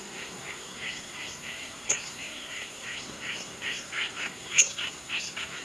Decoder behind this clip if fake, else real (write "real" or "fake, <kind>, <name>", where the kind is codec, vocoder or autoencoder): fake, codec, SNAC